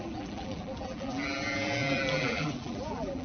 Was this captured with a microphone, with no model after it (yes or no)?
no